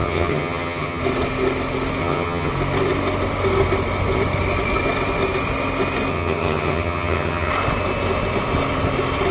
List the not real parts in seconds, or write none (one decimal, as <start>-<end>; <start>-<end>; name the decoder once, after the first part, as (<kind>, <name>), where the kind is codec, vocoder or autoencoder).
0.0-1.0 (vocoder, HiFi-GAN); 2.0-2.5; 6.1-7.5